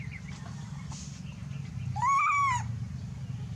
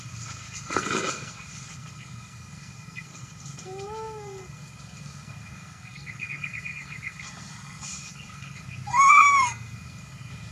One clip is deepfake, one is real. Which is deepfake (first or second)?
second